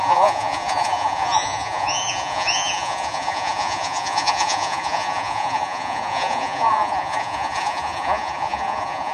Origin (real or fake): fake